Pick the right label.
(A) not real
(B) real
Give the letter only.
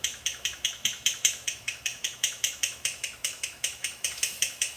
A